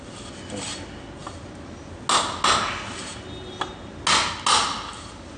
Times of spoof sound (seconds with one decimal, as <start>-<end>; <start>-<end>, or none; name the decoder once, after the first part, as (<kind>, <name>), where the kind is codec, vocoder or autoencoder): none